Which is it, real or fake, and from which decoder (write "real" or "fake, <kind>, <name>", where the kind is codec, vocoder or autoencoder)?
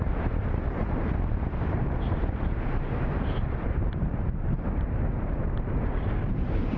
fake, vocoder, BigVGAN v2